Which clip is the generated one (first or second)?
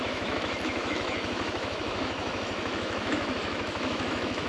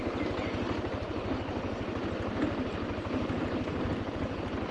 first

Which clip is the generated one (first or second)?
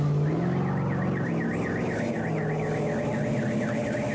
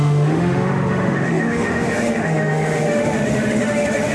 second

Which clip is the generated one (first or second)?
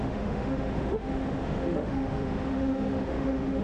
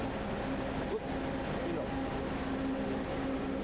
first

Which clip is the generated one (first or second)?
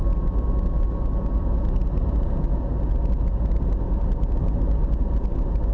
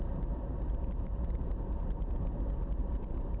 second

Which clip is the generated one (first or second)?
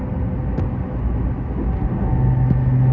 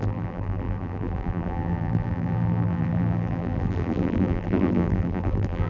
second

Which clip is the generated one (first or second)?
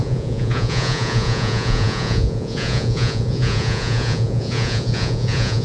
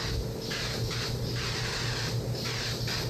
first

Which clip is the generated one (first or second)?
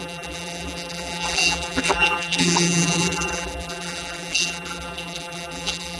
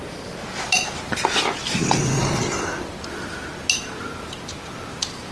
first